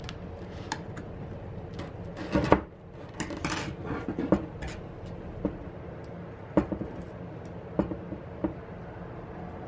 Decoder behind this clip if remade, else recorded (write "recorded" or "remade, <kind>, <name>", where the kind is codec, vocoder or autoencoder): recorded